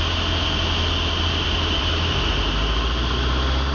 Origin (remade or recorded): recorded